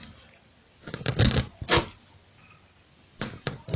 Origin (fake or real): real